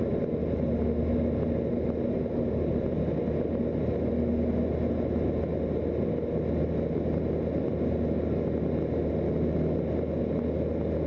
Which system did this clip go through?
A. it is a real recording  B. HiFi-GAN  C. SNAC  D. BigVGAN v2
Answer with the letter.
A